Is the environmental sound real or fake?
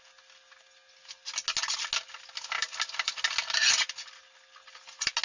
real